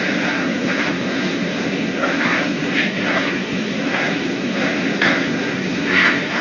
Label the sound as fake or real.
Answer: fake